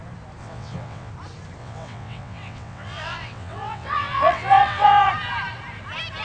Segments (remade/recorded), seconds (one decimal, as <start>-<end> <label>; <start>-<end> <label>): 0.0-0.4 recorded; 0.4-1.1 remade; 1.1-1.6 recorded; 1.6-5.1 remade; 5.1-6.2 recorded